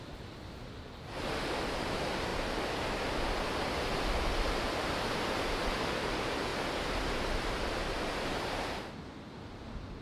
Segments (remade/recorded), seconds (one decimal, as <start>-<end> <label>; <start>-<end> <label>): 0.0-10.0 recorded